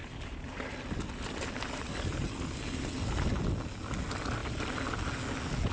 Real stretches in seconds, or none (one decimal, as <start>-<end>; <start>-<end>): 3.4-5.7